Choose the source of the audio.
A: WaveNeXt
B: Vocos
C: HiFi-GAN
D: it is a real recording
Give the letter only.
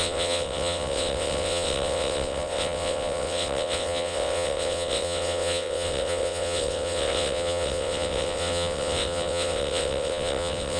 A